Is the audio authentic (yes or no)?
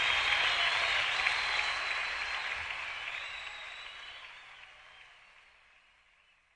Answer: yes